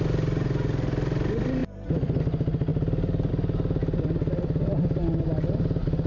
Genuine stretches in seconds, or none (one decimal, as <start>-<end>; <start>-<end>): 0.0-1.6; 2.2-2.7; 3.3-3.8; 4.7-6.1